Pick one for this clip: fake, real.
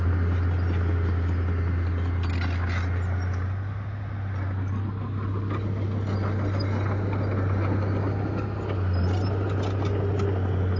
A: real